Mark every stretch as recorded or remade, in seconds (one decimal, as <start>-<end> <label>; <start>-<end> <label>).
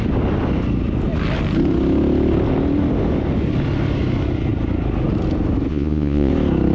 0.0-5.7 recorded; 5.7-6.3 remade; 6.3-6.7 recorded